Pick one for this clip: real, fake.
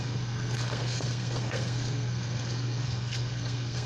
fake